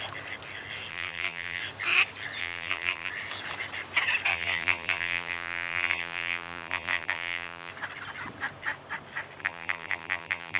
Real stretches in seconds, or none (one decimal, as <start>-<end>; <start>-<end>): 0.0-0.9; 1.6-2.4; 3.1-4.3; 7.7-9.4